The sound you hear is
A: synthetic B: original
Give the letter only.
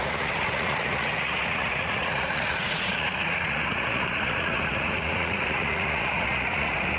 A